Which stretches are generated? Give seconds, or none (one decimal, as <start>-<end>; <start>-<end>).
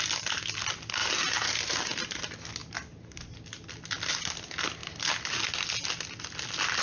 1.0-2.2; 2.6-3.3; 4.8-5.4